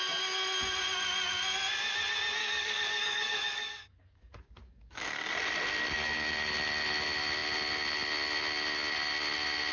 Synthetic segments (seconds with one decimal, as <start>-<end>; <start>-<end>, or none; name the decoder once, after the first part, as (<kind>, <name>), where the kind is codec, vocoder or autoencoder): 2.4-5.3 (codec, DAC)